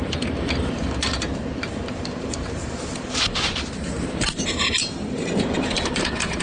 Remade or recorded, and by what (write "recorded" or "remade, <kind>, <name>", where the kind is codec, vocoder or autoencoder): remade, vocoder, BigVGAN v2